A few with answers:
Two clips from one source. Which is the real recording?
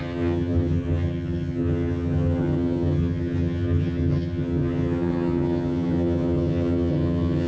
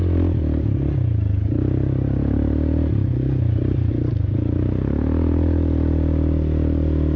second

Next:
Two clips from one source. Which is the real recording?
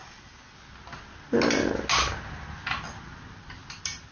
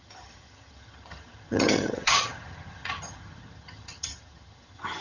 first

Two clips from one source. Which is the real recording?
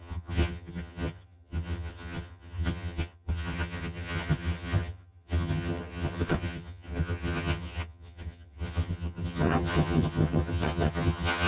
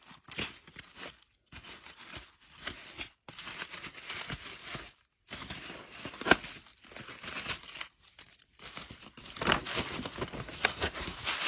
second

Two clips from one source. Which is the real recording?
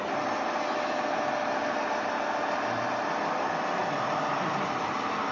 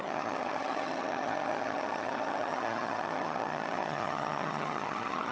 first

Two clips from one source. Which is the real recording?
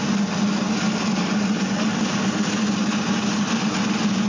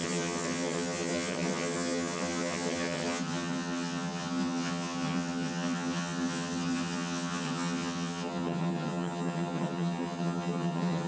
first